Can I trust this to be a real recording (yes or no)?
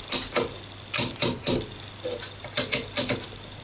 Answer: yes